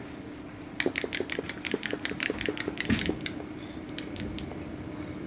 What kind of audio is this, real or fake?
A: real